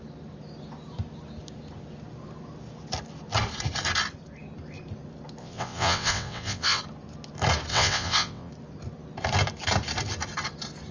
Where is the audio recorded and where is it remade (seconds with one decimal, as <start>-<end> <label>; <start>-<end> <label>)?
0.0-5.4 recorded; 5.4-6.8 remade; 6.8-7.7 recorded; 7.7-8.5 remade; 8.5-10.9 recorded